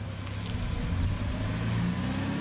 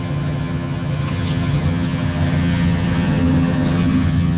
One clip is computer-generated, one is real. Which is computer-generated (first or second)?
second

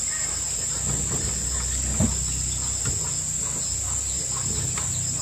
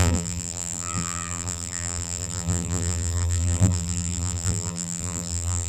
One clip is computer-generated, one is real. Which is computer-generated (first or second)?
second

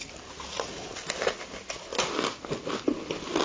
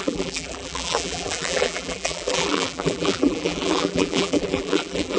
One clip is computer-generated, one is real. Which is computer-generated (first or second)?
second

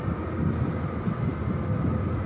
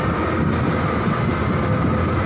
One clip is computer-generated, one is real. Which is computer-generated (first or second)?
first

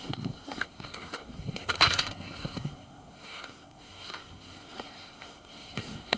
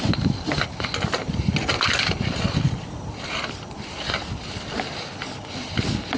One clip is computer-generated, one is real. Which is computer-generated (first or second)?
first